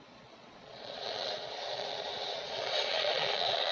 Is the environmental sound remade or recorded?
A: remade